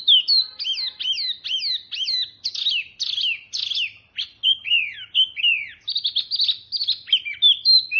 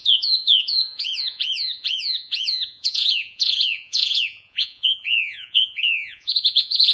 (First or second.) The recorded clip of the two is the first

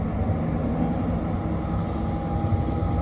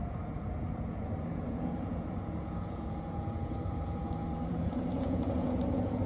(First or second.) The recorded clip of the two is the first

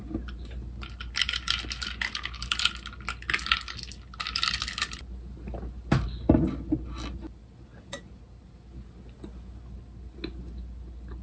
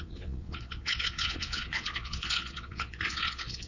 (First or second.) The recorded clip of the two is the first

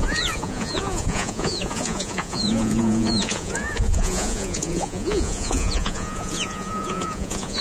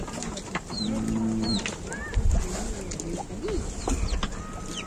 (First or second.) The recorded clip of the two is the second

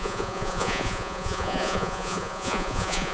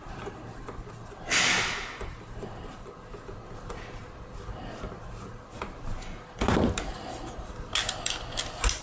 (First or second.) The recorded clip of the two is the second